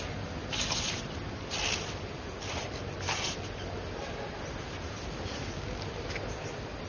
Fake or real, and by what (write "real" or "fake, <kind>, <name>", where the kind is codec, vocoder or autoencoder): real